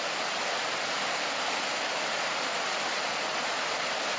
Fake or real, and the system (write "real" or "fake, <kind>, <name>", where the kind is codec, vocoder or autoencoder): real